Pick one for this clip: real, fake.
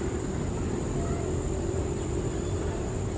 real